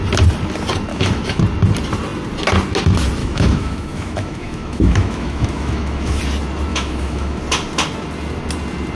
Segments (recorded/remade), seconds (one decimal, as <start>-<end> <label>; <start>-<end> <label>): 0.0-0.9 recorded; 0.9-1.4 remade; 1.4-3.2 recorded; 3.2-6.2 remade; 6.2-6.7 recorded; 6.7-7.4 remade; 7.4-9.0 recorded